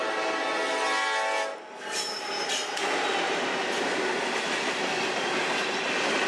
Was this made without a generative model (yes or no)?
yes